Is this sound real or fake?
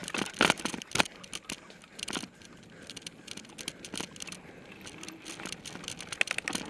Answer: real